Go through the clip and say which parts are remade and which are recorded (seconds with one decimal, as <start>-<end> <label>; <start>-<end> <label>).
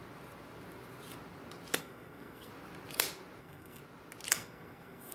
0.0-1.8 recorded; 1.8-2.5 remade; 2.5-3.4 recorded; 3.4-3.8 remade; 3.8-4.3 recorded; 4.3-5.1 remade